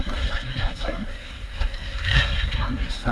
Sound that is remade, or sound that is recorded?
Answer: remade